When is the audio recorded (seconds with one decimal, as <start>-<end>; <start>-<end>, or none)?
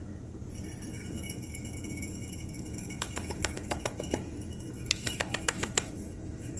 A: 0.4-0.9